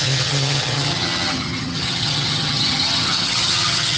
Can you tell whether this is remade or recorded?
remade